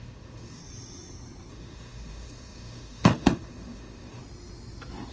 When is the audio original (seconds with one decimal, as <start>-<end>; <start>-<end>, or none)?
0.6-1.5; 4.2-5.1